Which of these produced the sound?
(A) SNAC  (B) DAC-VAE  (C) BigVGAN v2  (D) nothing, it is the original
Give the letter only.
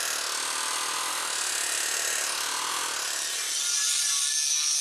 D